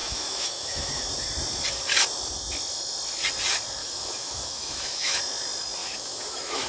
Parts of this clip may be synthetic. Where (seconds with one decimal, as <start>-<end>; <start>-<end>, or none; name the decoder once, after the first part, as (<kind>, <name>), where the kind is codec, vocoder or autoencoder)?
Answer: 0.0-0.9 (autoencoder, DAC-VAE); 3.8-5.2; 5.8-6.7